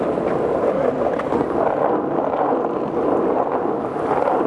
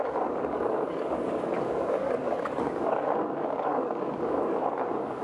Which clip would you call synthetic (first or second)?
second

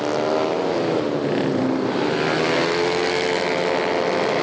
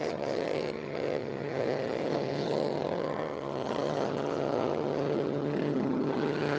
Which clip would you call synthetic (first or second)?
second